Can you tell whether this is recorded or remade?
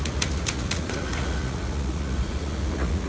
remade